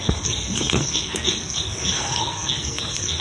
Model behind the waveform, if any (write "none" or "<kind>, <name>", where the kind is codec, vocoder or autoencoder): codec, SNAC